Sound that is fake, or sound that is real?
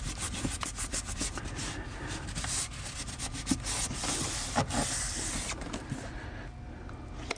real